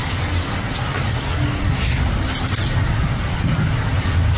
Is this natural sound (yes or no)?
yes